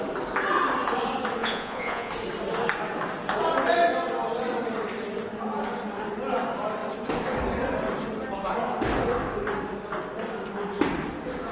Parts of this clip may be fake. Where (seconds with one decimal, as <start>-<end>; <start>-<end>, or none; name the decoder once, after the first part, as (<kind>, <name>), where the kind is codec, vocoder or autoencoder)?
1.4-2.1 (vocoder, Vocos)